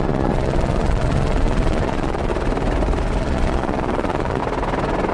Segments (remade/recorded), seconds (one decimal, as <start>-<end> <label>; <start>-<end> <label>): 0.0-2.3 remade; 2.3-3.2 recorded; 3.2-4.4 remade; 4.4-5.1 recorded